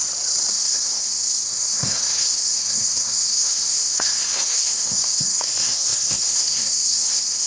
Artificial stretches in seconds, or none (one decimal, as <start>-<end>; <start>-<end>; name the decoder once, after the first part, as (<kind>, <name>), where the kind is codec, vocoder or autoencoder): 0.5-7.5 (codec, SNAC)